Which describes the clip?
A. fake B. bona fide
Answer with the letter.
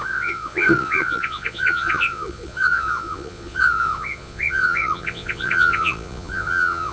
A